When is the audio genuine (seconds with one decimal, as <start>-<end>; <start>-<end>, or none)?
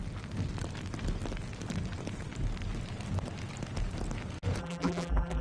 0.0-4.6